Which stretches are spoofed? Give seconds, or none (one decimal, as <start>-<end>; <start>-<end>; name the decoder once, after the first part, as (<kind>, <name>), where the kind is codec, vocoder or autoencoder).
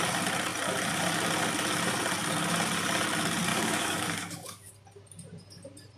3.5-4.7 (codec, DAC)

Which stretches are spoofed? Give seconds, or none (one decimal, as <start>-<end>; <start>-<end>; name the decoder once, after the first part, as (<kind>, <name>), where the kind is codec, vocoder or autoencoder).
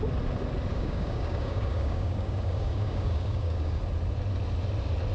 0.7-3.8 (codec, DAC)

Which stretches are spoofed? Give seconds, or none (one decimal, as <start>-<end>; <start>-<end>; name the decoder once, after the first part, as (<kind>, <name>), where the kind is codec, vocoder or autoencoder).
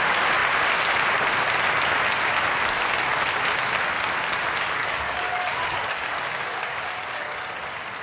4.8-7.5 (codec, DAC)